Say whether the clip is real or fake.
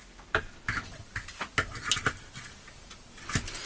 real